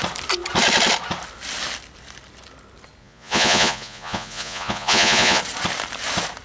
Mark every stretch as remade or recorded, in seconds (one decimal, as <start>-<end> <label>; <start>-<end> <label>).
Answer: 0.0-3.0 recorded; 3.0-5.4 remade; 5.4-6.4 recorded